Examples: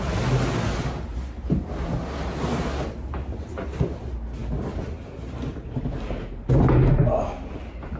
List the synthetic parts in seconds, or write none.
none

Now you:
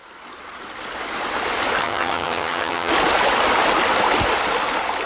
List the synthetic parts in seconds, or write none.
1.8-2.9 (vocoder, HiFi-GAN)

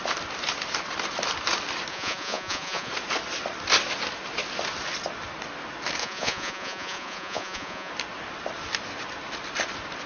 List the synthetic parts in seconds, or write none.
1.9-2.9 (vocoder, Vocos); 6.0-7.9

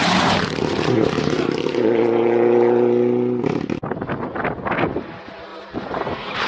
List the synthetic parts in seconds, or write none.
0.0-1.7 (vocoder, BigVGAN v2); 5.5-6.5

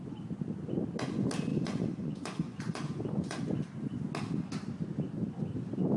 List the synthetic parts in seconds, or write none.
1.5-3.4 (vocoder, Vocos)

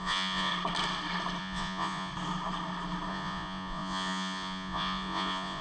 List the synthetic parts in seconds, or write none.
0.0-0.5 (vocoder, Vocos); 1.4-2.1; 3.1-5.6

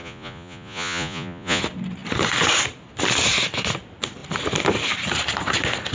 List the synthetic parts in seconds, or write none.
0.0-1.6 (vocoder, Vocos)

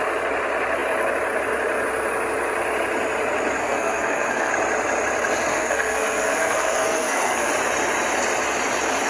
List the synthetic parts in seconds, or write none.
3.6-4.5 (codec, SNAC); 5.5-7.5